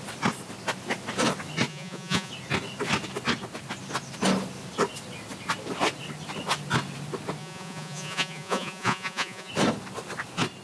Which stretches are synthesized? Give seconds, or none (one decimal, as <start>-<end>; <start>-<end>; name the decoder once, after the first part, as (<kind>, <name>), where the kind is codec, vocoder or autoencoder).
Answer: 1.7-2.3 (vocoder, Vocos); 7.4-9.5